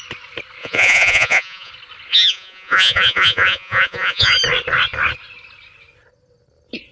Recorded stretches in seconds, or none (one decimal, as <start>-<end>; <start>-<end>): 0.0-0.6; 1.7-2.1; 4.3-6.9